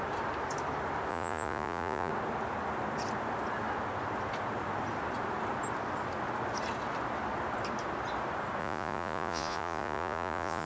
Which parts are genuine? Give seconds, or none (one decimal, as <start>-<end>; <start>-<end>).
0.0-1.1; 2.1-8.6